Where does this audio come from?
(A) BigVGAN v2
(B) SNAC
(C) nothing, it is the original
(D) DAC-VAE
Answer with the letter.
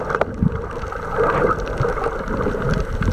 C